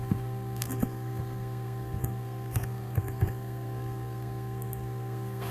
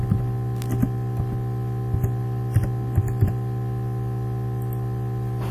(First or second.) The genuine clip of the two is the second